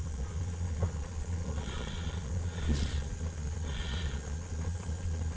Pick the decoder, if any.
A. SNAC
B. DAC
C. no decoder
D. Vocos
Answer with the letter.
D